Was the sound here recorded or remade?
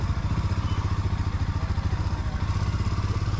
recorded